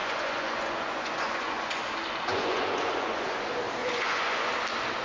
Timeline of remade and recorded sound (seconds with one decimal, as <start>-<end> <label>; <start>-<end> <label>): 0.0-1.8 remade; 1.8-2.3 recorded; 2.3-3.4 remade; 3.4-3.8 recorded; 3.8-4.5 remade; 4.5-5.0 recorded